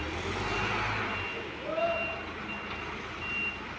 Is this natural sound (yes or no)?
yes